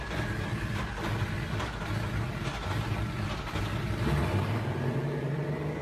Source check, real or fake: real